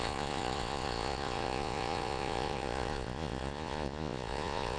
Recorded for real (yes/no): no